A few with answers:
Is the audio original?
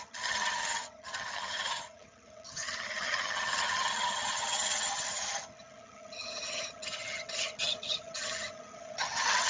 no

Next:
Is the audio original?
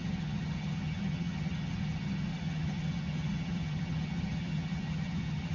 no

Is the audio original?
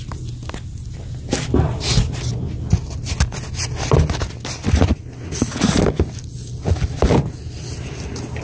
yes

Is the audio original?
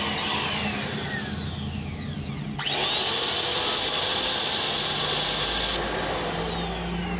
yes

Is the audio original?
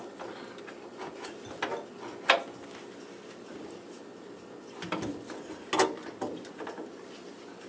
yes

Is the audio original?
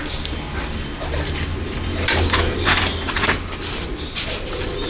yes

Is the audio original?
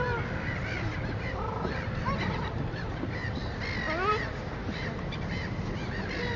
yes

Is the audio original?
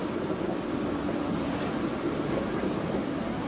yes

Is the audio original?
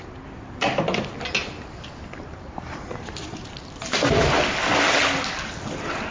yes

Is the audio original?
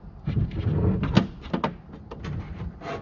yes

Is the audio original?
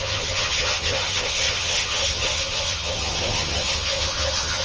no